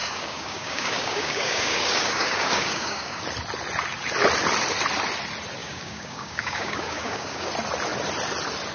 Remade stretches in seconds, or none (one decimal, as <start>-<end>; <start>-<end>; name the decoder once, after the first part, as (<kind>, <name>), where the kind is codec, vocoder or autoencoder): 0.0-3.2 (codec, DAC); 5.6-7.5